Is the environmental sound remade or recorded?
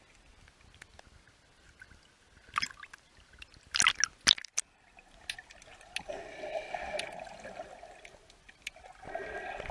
recorded